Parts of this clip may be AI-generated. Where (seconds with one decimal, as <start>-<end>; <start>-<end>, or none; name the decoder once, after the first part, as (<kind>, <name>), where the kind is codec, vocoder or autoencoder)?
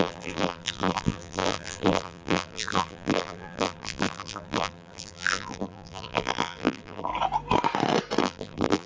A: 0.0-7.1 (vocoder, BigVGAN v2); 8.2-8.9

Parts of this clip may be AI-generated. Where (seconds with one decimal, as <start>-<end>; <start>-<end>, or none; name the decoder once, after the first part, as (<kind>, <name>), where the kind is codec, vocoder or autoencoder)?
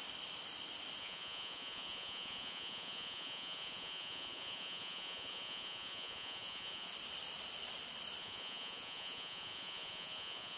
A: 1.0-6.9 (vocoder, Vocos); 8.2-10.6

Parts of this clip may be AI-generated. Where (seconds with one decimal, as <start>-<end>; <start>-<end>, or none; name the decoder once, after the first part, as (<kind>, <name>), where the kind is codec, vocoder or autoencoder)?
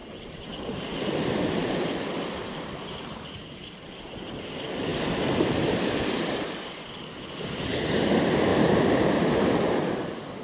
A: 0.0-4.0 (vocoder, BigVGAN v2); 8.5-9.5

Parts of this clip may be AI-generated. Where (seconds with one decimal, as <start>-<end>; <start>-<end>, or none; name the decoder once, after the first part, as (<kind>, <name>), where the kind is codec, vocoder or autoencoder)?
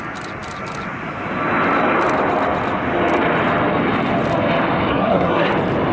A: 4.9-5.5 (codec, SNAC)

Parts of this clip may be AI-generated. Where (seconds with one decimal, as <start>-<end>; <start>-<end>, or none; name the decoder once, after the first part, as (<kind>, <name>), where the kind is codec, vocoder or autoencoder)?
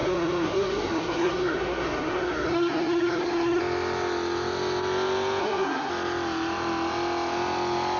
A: 0.0-3.6 (codec, SNAC); 5.4-5.9